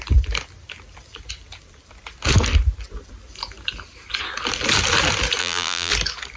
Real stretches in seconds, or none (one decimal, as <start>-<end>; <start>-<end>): 0.0-5.4; 5.9-6.4